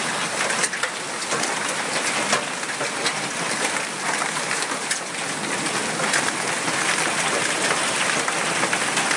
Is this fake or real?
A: real